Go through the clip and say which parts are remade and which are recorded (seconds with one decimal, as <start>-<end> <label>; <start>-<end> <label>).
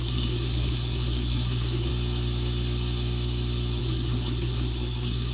0.0-1.9 remade; 1.9-3.8 recorded; 3.8-5.3 remade